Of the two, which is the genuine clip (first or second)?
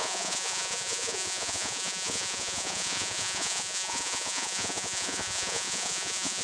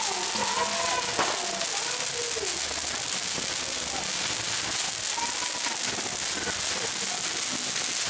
second